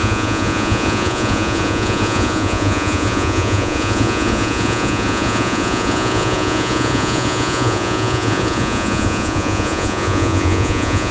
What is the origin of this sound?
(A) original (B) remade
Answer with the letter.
B